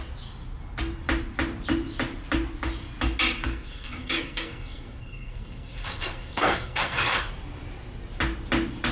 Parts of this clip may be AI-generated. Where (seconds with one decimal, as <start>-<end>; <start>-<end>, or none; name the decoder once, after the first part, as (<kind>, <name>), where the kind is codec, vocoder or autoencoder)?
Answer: 3.4-7.3 (codec, SNAC)